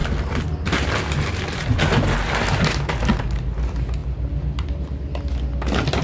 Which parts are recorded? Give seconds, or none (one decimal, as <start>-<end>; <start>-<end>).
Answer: 0.0-6.0